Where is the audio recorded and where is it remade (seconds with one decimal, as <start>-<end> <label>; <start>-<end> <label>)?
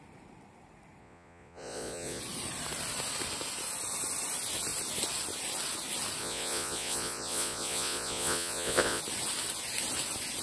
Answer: 0.0-1.0 recorded; 1.0-2.2 remade; 2.2-6.2 recorded; 6.2-9.0 remade; 9.0-10.4 recorded